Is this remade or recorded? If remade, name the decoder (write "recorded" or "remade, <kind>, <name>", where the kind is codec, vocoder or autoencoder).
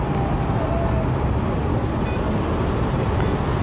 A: recorded